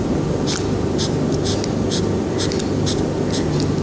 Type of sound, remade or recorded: recorded